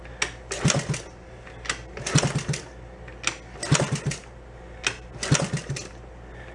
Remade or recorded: recorded